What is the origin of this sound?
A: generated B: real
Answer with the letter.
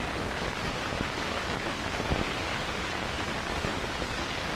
A